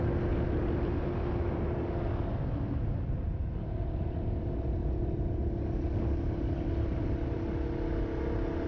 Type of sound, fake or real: real